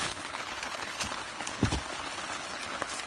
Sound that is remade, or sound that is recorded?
remade